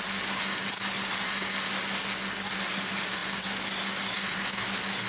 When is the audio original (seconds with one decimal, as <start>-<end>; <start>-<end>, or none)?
0.0-5.1